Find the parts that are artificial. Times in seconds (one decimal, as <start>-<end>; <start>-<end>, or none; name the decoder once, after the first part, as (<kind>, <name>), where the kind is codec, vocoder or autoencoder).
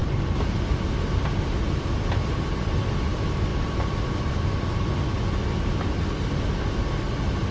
none